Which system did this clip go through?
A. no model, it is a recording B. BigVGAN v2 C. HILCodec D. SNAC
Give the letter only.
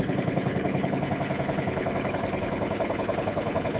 C